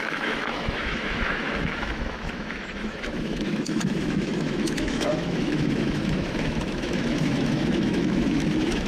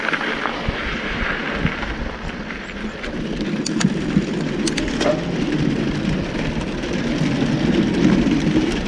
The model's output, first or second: first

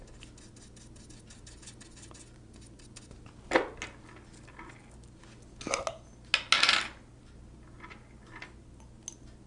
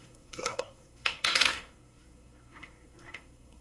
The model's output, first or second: second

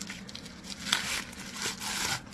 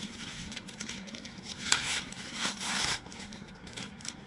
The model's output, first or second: second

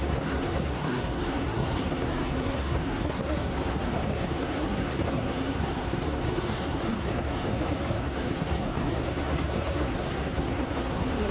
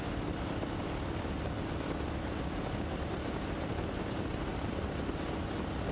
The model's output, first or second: first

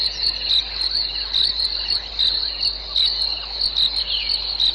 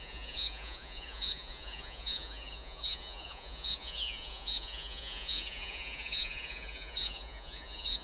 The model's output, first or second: second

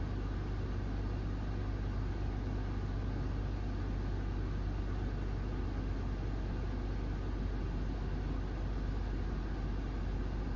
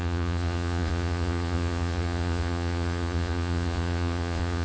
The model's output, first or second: second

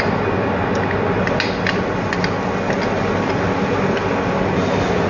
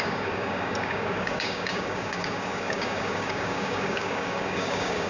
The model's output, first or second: second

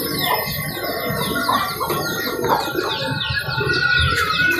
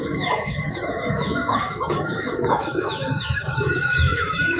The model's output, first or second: second